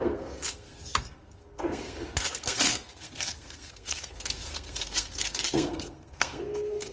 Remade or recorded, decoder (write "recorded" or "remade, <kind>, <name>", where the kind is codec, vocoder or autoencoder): remade, codec, SNAC